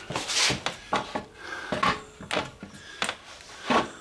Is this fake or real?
real